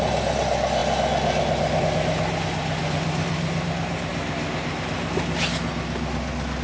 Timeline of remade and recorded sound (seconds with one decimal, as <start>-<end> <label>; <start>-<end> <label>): 0.0-6.6 recorded

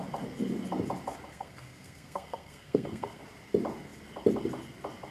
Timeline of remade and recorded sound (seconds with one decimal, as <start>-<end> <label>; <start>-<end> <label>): 0.0-1.3 recorded; 1.3-3.2 remade; 3.2-5.1 recorded

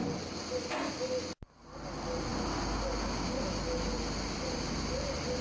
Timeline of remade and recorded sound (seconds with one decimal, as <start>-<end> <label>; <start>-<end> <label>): 0.0-5.4 recorded

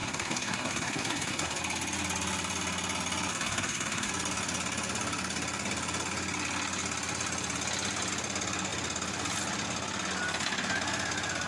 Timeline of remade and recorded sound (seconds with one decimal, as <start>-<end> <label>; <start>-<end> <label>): 0.0-1.6 remade; 1.6-3.3 recorded; 3.3-4.1 remade; 4.1-11.5 recorded

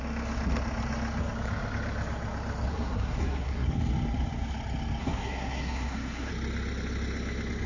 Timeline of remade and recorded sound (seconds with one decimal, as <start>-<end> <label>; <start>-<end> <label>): 0.0-2.7 recorded; 2.7-3.7 remade; 3.7-5.0 recorded; 5.0-6.3 remade; 6.3-7.7 recorded